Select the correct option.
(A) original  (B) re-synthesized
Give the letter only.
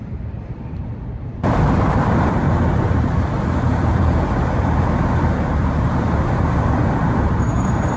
B